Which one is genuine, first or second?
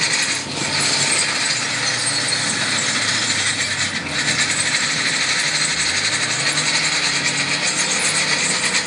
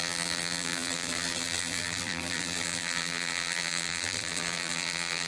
first